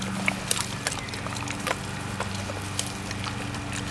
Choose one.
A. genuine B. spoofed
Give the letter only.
A